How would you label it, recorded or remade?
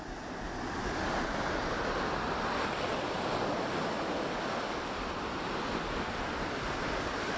recorded